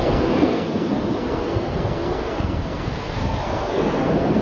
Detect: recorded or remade remade